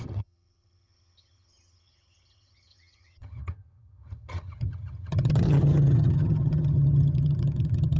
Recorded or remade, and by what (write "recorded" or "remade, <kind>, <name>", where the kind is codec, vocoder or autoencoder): remade, vocoder, HiFi-GAN